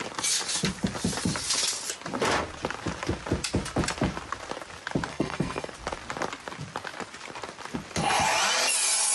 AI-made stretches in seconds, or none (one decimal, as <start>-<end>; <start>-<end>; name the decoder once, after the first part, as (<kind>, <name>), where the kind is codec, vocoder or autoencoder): 5.1-5.7 (codec, SNAC)